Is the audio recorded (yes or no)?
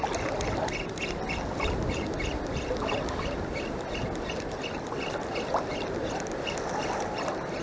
yes